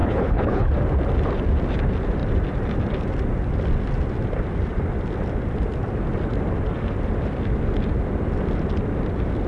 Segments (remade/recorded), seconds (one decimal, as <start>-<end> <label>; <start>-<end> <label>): 0.0-0.7 remade; 0.7-9.5 recorded